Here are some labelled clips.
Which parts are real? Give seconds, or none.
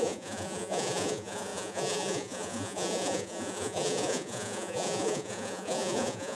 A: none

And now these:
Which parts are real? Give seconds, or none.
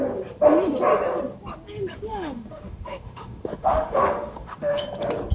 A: 0.0-2.1; 4.8-5.3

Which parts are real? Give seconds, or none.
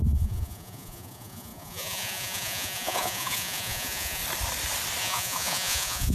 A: 4.2-5.0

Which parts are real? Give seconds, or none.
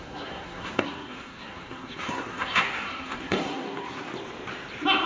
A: 4.1-5.1